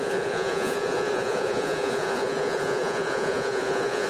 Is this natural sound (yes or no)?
no